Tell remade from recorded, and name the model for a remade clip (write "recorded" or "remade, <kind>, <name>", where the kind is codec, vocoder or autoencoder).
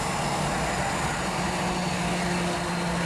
recorded